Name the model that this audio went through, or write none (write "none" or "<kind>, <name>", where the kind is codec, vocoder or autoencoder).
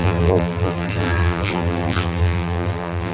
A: vocoder, BigVGAN v2